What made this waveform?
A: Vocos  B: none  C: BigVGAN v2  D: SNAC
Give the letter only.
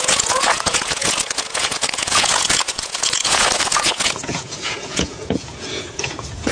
A